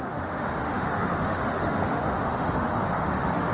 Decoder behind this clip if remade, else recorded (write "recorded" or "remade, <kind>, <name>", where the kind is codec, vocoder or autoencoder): remade, autoencoder, DAC-VAE